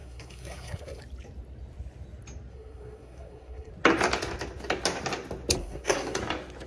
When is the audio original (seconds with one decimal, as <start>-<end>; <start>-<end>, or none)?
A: 1.0-2.5; 3.7-5.6; 6.2-6.7